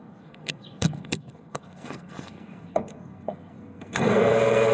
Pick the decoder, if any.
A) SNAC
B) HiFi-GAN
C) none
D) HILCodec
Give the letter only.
A